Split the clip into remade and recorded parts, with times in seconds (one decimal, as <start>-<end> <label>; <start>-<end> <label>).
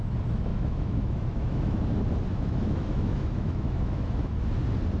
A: 0.0-0.5 recorded; 0.5-1.8 remade; 1.8-2.3 recorded; 2.3-4.4 remade; 4.4-5.0 recorded